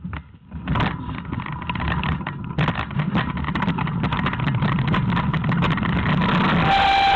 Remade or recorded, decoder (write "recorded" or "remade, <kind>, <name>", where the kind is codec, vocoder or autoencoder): recorded